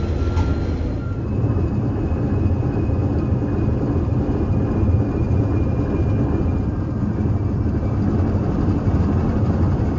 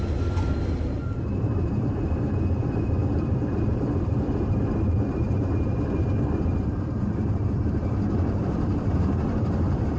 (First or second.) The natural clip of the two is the first